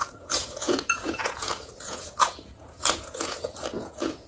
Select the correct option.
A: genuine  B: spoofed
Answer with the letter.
B